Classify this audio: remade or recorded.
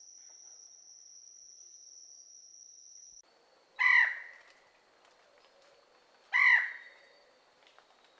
recorded